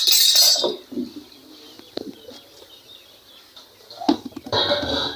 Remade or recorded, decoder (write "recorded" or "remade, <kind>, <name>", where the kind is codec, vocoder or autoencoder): recorded